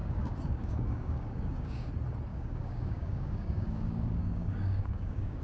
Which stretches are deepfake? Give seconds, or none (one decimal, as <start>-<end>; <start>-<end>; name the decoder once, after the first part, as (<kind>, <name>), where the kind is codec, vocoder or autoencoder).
0.0-1.9 (codec, DAC); 2.3-5.4